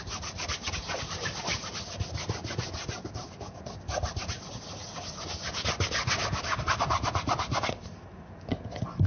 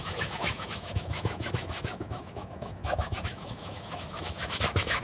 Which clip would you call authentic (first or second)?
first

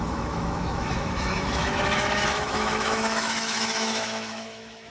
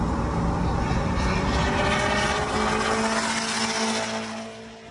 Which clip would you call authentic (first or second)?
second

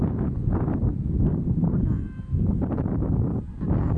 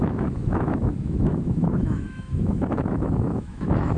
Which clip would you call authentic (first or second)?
first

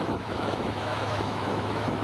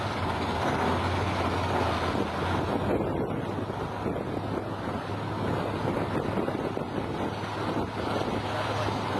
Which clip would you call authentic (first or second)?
second